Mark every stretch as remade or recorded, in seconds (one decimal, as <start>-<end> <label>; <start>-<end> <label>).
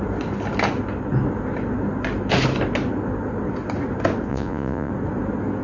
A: 0.0-4.3 recorded; 4.3-4.9 remade; 4.9-5.6 recorded